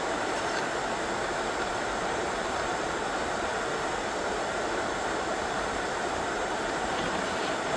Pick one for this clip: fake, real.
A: fake